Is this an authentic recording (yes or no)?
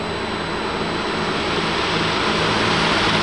yes